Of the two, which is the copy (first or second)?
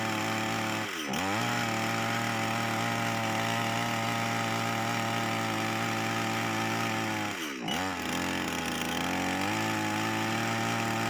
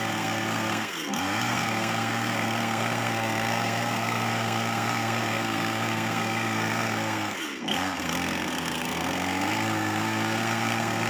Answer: second